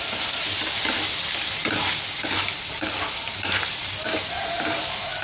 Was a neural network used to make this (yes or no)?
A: no